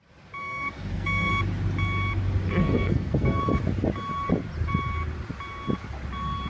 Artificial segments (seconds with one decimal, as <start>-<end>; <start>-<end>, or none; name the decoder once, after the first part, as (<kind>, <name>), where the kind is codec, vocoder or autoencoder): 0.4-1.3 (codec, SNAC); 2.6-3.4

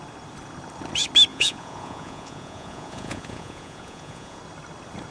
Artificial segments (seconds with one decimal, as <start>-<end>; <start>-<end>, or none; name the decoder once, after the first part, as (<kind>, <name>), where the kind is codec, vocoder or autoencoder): 1.3-4.4 (vocoder, Vocos)

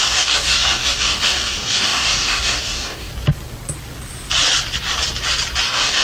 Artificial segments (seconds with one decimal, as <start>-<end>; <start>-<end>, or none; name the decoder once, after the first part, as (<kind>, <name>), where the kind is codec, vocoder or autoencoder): 0.0-3.1 (codec, DAC); 5.6-6.0

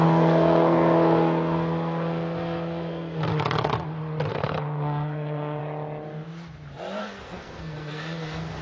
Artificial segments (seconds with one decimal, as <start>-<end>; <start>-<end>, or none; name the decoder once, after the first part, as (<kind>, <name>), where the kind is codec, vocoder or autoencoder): 0.0-3.3 (codec, SNAC); 4.3-5.6; 7.0-8.6

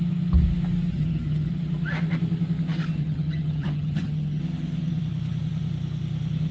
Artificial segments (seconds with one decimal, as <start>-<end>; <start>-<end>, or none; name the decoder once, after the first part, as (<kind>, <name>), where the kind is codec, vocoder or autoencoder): 0.9-1.5 (vocoder, HiFi-GAN); 3.0-4.4

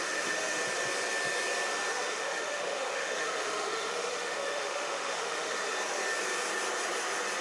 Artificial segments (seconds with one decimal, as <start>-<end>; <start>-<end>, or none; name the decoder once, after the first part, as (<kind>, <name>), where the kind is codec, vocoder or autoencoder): 0.0-0.6 (autoencoder, DAC-VAE); 1.9-5.6

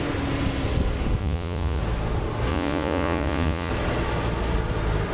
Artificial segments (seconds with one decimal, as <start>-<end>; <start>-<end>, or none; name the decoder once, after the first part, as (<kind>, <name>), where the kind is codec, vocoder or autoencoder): 1.2-1.8 (vocoder, Vocos); 2.5-3.7

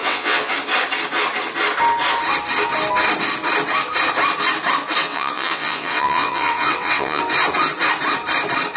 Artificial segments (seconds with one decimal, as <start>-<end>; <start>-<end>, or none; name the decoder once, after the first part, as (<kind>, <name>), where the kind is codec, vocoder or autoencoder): 0.0-0.5 (vocoder, WaveNeXt); 5.1-7.2